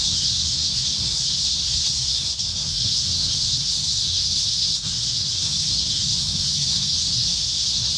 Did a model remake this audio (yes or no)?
yes